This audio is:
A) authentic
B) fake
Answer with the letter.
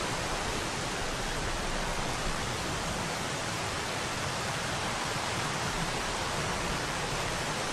B